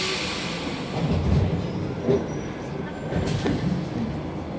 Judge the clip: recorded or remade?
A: recorded